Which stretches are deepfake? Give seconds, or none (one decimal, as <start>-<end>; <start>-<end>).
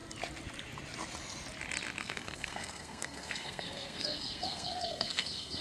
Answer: 2.0-5.6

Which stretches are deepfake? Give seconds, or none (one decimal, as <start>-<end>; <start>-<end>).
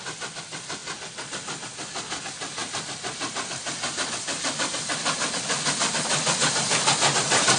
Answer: none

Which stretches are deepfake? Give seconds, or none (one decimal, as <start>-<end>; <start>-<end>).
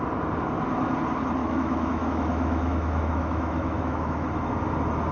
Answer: 1.4-4.5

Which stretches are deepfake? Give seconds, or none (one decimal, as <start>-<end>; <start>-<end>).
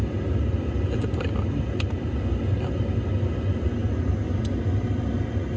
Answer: none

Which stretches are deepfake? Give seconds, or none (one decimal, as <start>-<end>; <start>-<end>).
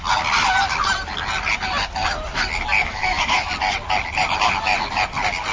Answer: 2.8-3.5